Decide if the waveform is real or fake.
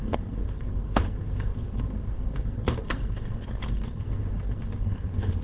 fake